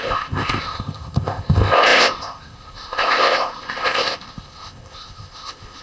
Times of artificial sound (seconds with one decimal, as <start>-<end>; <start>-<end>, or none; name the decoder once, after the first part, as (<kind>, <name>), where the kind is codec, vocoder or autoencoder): 0.0-5.8 (codec, ZipCodec)